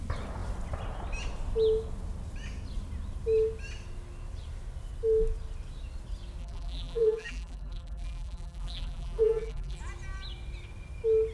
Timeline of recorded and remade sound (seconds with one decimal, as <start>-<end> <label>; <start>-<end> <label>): 0.0-6.4 recorded; 6.4-9.8 remade; 9.8-11.3 recorded